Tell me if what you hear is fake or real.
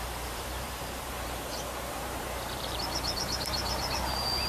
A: fake